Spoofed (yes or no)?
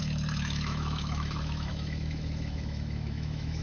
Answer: yes